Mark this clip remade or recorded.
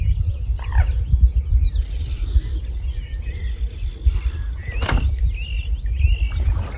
recorded